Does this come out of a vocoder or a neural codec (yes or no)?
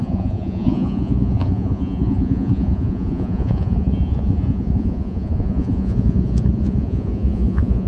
yes